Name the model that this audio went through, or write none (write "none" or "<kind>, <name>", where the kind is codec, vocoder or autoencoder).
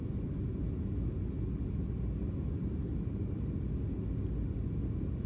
none